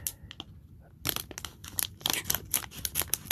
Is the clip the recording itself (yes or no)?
yes